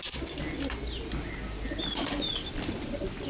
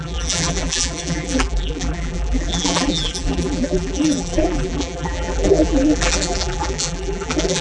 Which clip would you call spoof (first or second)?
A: second